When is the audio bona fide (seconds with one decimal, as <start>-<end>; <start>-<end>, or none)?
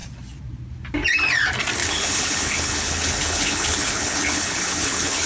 0.0-1.8